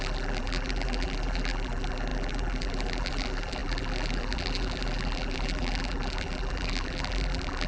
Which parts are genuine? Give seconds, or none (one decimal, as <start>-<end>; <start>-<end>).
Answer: none